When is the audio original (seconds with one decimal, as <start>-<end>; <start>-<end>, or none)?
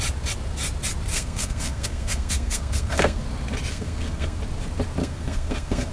0.0-1.1; 3.2-3.7; 4.4-5.0